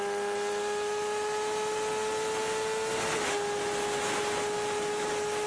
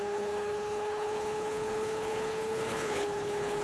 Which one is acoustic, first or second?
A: first